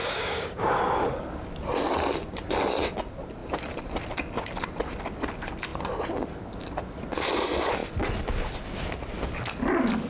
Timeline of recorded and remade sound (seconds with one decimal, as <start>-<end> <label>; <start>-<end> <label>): 0.0-0.8 remade; 0.8-10.1 recorded